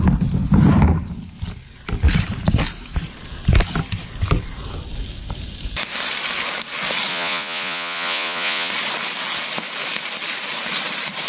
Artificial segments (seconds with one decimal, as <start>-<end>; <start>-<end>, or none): 7.1-8.7